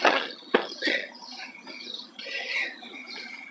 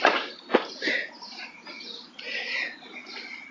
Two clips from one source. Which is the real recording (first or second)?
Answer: second